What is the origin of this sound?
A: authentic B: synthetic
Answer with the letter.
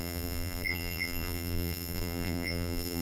B